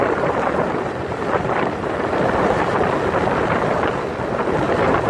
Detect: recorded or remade remade